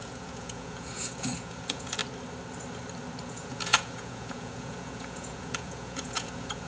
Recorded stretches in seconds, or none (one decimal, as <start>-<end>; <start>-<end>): 2.0-3.3